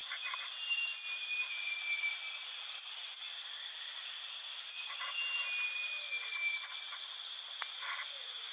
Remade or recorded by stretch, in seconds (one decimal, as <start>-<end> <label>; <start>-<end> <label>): 0.0-8.5 recorded